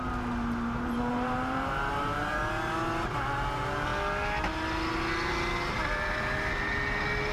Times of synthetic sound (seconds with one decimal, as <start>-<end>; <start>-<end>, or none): 1.1-2.4